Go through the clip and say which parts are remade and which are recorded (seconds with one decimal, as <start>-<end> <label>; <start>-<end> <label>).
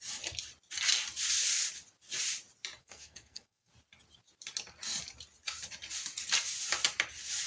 0.0-2.8 recorded; 2.8-3.7 remade; 3.7-7.5 recorded